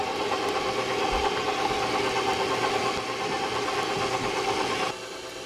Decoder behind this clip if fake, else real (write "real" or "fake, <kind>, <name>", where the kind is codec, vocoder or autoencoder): real